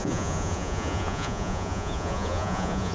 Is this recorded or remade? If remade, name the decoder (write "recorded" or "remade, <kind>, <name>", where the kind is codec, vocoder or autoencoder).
remade, vocoder, Vocos